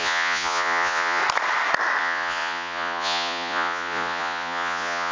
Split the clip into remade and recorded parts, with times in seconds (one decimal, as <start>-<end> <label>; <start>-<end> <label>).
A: 0.0-1.2 remade; 1.2-2.0 recorded; 2.0-5.1 remade